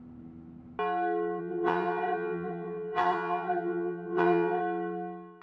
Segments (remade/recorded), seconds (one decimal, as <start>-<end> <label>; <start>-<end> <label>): 0.0-1.4 recorded; 1.4-4.6 remade; 4.6-5.4 recorded